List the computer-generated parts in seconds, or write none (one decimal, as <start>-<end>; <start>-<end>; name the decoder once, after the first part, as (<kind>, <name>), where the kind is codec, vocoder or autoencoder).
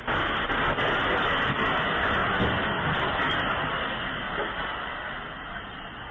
none